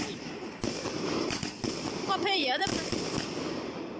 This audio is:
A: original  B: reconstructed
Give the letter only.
B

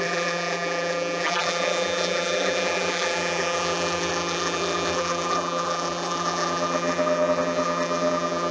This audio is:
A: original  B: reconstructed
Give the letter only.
B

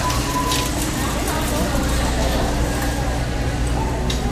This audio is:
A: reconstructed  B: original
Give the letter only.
B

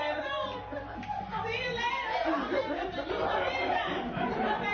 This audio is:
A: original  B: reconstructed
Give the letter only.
A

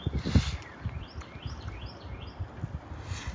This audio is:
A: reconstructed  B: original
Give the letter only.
B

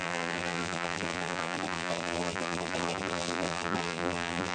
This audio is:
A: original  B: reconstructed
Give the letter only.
B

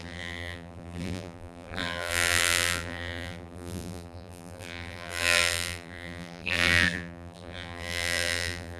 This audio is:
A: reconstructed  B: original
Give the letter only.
A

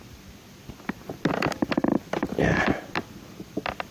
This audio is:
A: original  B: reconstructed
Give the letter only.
A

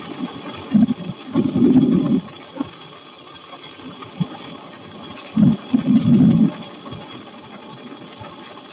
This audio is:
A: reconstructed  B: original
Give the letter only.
B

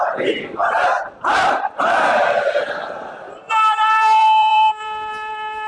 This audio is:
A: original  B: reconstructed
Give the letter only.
B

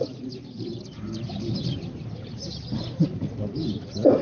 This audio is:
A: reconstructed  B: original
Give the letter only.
A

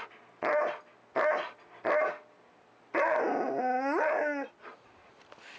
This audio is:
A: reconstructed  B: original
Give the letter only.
B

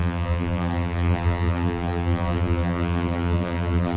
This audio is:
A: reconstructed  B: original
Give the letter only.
A